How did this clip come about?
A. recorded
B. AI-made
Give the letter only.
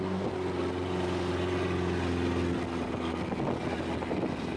A